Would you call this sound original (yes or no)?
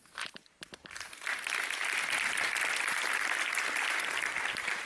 yes